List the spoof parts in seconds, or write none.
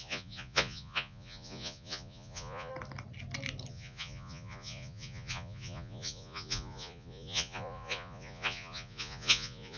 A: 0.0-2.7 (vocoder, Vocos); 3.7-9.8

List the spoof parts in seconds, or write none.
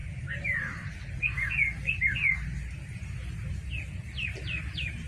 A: 0.0-1.2 (vocoder, BigVGAN v2); 2.9-3.5